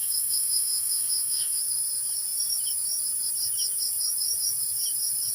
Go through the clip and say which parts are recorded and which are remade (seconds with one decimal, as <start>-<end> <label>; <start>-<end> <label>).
0.0-1.6 remade; 1.6-5.3 recorded